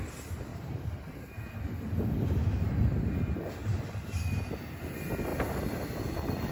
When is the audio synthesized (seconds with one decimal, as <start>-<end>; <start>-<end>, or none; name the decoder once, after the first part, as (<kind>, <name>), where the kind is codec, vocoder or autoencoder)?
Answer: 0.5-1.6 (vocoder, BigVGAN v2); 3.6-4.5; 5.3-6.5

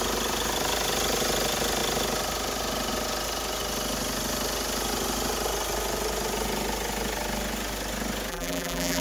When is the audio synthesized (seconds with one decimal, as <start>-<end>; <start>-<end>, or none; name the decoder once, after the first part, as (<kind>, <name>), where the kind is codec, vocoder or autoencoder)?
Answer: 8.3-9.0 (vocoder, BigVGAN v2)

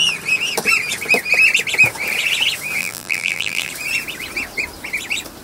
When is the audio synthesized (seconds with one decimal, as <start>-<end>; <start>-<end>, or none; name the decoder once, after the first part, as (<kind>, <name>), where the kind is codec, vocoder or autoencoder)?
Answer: 2.8-3.7 (vocoder, BigVGAN v2)

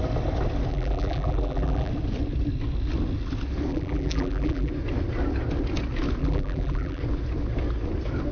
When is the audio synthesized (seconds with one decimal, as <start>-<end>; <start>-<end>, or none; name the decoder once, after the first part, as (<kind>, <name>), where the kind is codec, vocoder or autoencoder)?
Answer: 0.7-1.9 (vocoder, BigVGAN v2); 3.7-4.7; 6.2-7.0

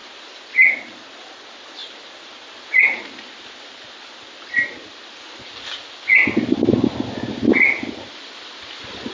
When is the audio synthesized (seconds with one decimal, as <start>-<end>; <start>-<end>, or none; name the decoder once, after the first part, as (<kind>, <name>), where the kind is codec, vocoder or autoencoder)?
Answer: none

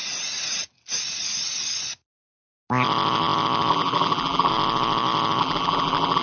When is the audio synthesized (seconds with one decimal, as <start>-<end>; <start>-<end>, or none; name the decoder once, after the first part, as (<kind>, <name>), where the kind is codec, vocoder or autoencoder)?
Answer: 3.7-4.5 (vocoder, BigVGAN v2); 5.4-6.2

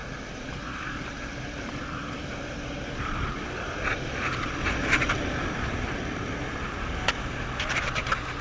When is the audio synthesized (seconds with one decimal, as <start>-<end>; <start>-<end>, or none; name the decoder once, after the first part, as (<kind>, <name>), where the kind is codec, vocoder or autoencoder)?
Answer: 0.0-4.5 (vocoder, BigVGAN v2)

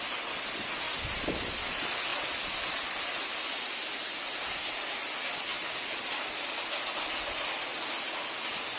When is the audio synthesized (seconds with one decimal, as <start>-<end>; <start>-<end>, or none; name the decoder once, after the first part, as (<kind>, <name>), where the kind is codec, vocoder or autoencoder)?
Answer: 5.5-6.2 (vocoder, BigVGAN v2)